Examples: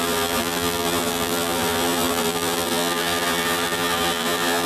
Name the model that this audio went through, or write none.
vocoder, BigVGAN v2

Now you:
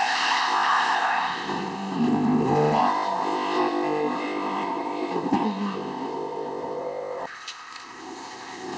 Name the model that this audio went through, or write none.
codec, ZipCodec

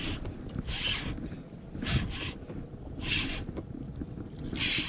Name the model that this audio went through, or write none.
none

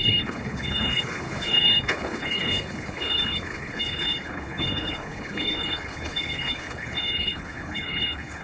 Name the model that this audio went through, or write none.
codec, HILCodec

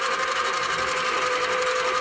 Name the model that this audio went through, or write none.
none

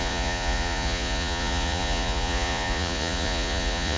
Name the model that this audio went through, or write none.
vocoder, Vocos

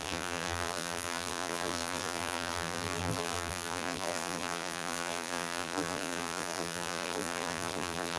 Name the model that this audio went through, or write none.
vocoder, BigVGAN v2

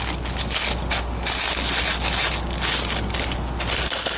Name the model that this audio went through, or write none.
none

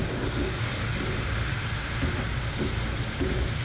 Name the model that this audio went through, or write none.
none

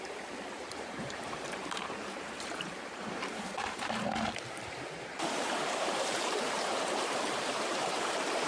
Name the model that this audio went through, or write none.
vocoder, BigVGAN v2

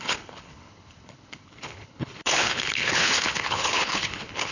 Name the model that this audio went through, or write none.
codec, HILCodec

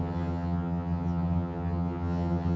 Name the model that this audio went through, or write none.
vocoder, HiFi-GAN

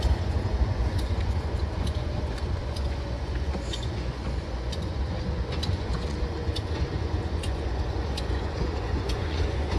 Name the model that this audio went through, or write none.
vocoder, Vocos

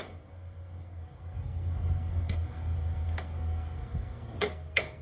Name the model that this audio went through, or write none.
codec, SNAC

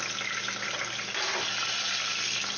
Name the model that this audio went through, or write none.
none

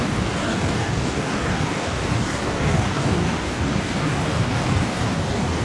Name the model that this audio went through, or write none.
codec, DAC